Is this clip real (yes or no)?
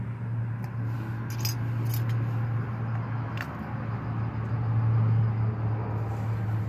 yes